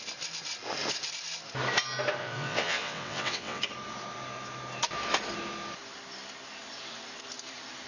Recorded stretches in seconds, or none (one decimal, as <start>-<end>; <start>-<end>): 0.0-2.2; 3.6-7.9

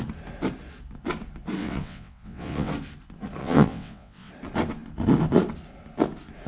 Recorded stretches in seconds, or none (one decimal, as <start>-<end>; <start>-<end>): 0.0-1.6; 2.7-3.4; 4.3-6.5

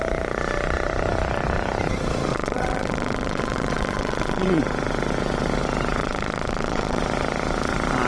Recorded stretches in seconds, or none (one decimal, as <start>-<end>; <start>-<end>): 0.0-2.3; 4.6-6.0; 7.0-8.1